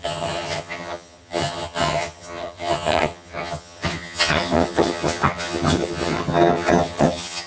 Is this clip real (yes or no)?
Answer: no